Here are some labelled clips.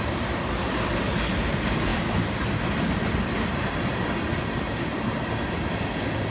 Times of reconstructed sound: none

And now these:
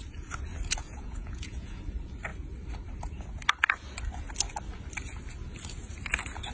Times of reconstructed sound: 0.8-1.8

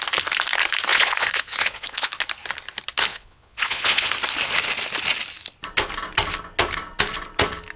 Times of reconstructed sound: 0.9-2.1; 3.1-4.1

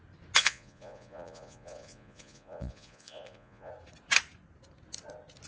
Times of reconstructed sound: 0.4-3.7

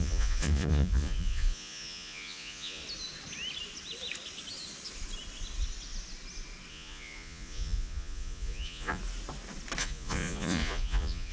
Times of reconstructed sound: 0.0-2.8; 6.7-9.0; 9.8-11.3

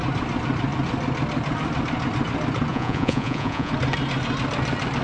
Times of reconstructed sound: 2.7-3.7

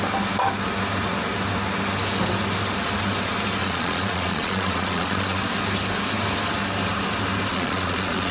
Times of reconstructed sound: 3.6-5.4; 7.5-8.3